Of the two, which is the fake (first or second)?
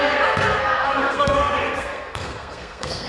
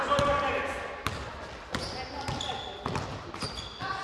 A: first